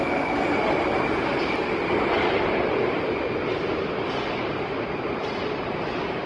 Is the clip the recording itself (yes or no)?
yes